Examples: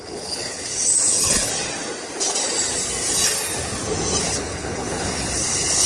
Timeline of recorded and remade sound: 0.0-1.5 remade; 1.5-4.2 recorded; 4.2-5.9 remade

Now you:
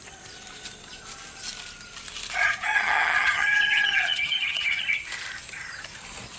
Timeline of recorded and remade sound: 0.0-2.4 recorded; 2.4-4.8 remade; 4.8-6.4 recorded